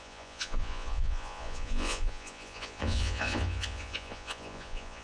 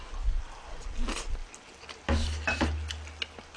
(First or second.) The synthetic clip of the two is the first